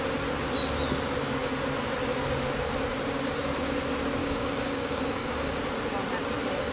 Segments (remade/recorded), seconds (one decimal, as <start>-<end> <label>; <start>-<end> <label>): 0.0-4.2 recorded; 4.2-5.6 remade; 5.6-6.7 recorded